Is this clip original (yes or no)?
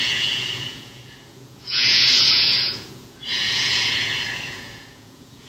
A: no